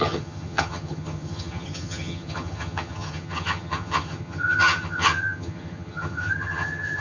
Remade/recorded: remade